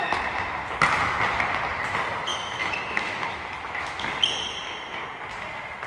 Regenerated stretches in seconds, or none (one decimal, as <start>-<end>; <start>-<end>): 2.3-4.2